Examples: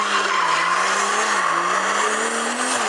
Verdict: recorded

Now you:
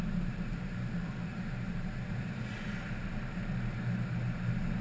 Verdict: remade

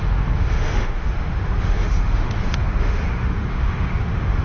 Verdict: remade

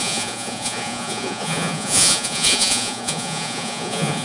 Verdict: remade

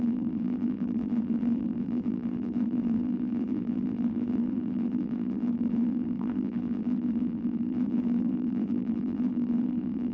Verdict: remade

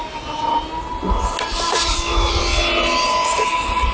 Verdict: recorded